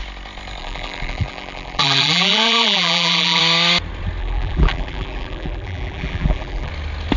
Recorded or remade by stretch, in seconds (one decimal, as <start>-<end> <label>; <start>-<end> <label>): 0.0-0.6 recorded; 0.6-3.4 remade; 3.4-4.2 recorded; 4.2-6.7 remade; 6.7-7.2 recorded